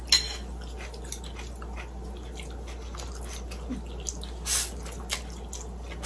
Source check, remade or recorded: recorded